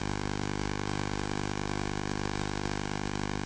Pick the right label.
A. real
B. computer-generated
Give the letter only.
B